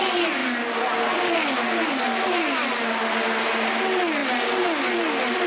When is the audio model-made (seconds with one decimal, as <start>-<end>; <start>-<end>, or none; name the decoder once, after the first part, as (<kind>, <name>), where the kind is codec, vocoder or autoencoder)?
none